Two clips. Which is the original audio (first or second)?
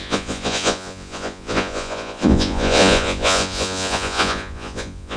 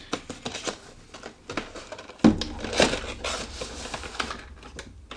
second